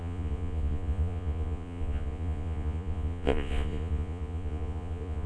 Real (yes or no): no